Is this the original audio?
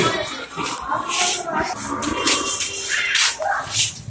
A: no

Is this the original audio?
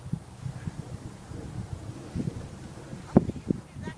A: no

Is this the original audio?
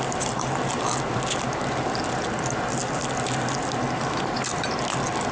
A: yes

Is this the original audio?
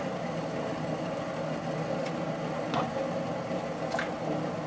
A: yes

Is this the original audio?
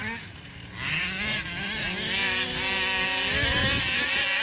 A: yes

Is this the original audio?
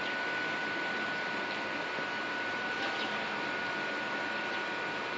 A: yes